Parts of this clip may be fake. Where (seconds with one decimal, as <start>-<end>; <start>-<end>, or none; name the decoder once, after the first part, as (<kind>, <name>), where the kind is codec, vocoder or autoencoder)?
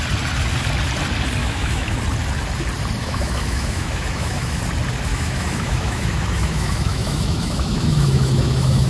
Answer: 1.4-2.0 (autoencoder, DAC-VAE); 3.0-4.6; 5.1-8.9